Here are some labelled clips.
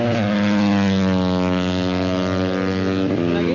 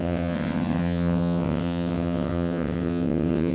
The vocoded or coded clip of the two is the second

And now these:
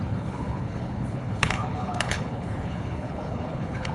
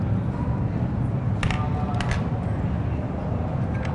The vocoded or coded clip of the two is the first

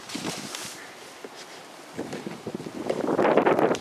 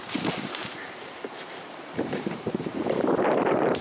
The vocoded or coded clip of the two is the second